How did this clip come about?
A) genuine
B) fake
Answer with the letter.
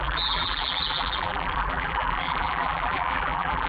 B